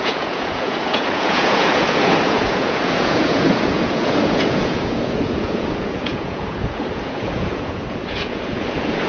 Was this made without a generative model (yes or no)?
no